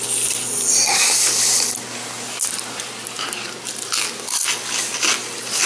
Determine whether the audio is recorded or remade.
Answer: recorded